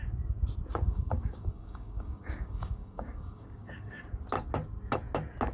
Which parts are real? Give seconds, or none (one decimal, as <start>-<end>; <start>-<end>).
0.0-0.7; 4.0-5.5